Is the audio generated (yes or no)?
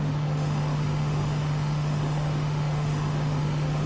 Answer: yes